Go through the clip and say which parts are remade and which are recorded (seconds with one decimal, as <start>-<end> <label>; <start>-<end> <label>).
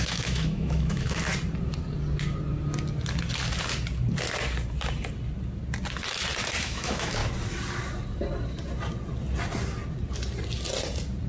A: 0.0-1.3 remade; 1.3-6.6 recorded; 6.6-7.2 remade; 7.2-11.3 recorded